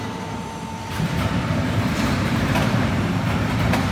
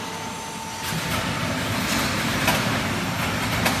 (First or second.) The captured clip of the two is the second